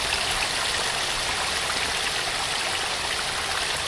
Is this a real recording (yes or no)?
yes